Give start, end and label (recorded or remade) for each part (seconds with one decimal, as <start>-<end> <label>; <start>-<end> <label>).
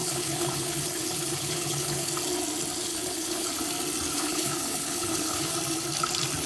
0.0-2.1 remade; 2.1-2.9 recorded; 2.9-3.5 remade; 3.5-4.1 recorded; 4.1-5.5 remade; 5.5-6.5 recorded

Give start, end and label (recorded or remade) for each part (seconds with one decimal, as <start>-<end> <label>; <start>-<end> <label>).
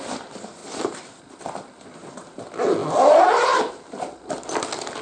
0.0-5.0 recorded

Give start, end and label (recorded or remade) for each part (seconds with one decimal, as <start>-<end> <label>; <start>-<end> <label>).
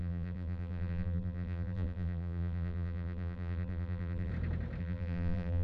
0.0-4.3 remade; 4.3-4.8 recorded; 4.8-5.6 remade